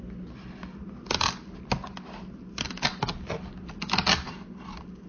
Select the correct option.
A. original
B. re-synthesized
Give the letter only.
A